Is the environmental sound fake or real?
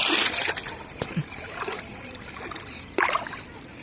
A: real